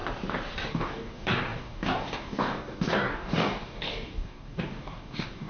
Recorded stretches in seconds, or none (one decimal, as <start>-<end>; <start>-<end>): 0.0-0.7